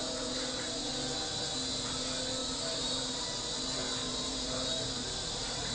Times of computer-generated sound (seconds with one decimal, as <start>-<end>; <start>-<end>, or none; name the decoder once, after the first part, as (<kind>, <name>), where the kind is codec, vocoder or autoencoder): 0.0-0.9 (vocoder, BigVGAN v2); 2.4-3.2; 4.1-5.7